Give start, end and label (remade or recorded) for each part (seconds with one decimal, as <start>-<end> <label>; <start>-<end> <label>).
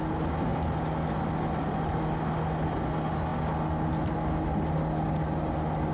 0.0-5.9 recorded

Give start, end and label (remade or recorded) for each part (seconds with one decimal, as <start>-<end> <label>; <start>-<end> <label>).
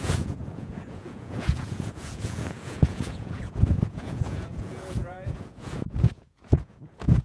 0.0-7.2 remade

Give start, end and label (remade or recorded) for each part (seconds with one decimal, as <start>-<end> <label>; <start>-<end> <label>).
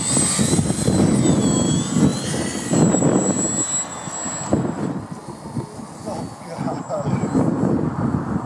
0.0-8.5 recorded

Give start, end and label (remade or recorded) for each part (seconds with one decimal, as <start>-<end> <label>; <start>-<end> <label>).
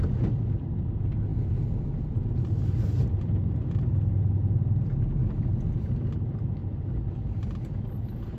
0.0-8.4 recorded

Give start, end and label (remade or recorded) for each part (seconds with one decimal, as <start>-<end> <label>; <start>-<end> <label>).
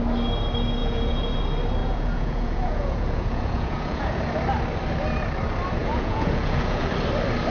0.0-0.8 recorded; 0.8-1.4 remade; 1.4-1.8 recorded; 1.8-4.2 remade; 4.2-5.8 recorded; 5.8-6.9 remade; 6.9-7.5 recorded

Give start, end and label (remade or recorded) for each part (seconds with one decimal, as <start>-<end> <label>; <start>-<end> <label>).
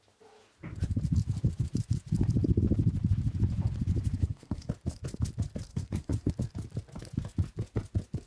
0.0-4.2 recorded; 4.2-4.7 remade; 4.7-5.7 recorded; 5.7-6.3 remade; 6.3-8.3 recorded